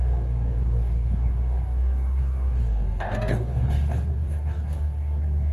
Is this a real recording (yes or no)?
no